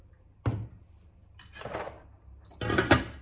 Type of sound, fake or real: real